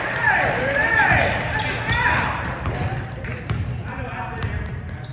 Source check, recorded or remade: remade